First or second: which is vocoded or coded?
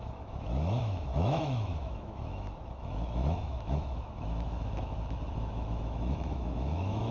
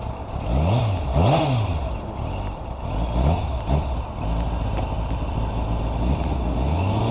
first